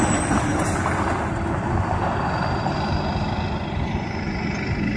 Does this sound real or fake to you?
real